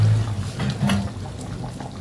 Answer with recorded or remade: recorded